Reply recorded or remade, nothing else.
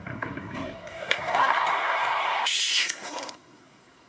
remade